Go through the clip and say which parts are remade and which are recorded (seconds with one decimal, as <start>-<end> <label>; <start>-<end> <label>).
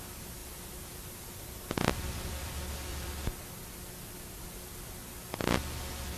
0.0-0.4 recorded; 0.4-2.5 remade; 2.5-2.9 recorded; 2.9-5.3 remade; 5.3-6.2 recorded